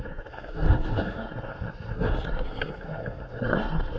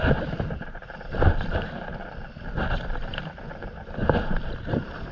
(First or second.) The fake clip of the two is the first